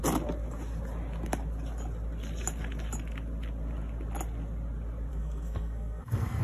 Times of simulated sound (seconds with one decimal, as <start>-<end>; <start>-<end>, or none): 5.1-6.4